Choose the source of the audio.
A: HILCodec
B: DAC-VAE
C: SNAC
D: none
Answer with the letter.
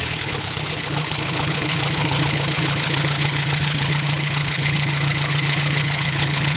A